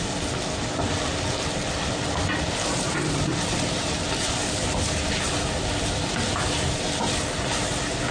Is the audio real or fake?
real